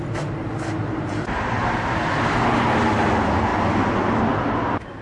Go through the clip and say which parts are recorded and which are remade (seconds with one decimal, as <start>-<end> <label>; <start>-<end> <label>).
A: 0.0-5.0 recorded